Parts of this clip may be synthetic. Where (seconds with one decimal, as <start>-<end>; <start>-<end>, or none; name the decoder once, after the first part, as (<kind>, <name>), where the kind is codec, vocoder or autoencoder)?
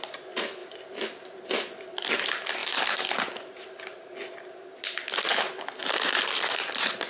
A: none